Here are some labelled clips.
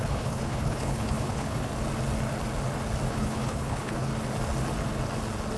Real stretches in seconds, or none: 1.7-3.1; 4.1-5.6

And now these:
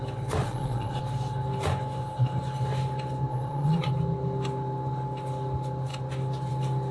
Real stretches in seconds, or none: 0.0-0.4; 1.0-3.3; 3.9-6.9

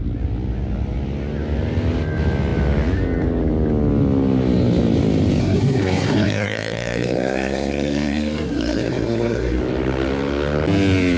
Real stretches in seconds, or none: 0.0-5.4; 9.6-11.2

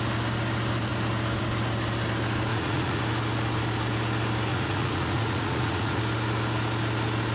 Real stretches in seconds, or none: 0.0-2.5; 3.0-4.5; 6.0-7.3